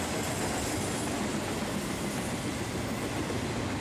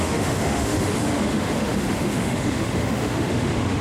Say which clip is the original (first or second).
first